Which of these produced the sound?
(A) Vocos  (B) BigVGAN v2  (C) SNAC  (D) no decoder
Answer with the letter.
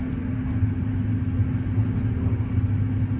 D